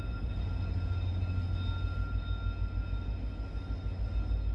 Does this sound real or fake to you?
real